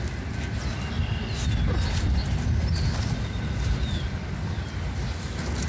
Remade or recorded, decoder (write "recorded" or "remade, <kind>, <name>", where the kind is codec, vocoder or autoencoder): recorded